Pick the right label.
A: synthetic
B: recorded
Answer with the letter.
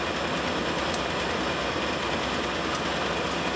B